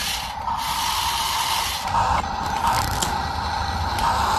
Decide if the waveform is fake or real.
real